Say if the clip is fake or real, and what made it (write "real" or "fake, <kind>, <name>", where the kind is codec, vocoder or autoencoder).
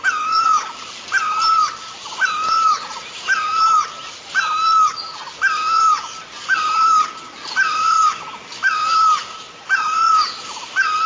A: real